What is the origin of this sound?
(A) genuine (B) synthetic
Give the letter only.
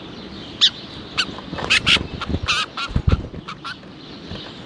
A